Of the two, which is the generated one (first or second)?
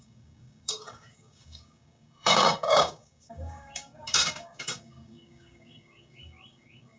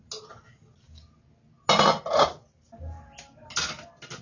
first